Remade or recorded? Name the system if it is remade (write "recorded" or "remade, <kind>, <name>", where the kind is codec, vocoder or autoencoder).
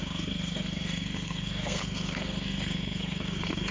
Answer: remade, codec, SNAC